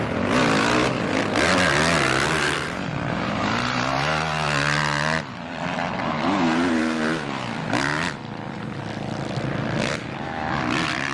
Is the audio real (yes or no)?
yes